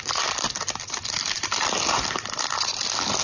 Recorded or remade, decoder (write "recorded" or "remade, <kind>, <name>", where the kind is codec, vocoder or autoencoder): recorded